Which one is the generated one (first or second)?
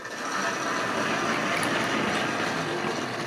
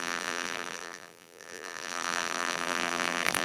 second